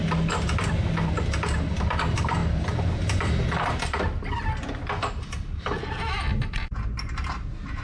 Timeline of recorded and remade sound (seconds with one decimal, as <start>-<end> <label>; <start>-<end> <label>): 0.0-7.8 recorded